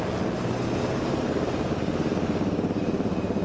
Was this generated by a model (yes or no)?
no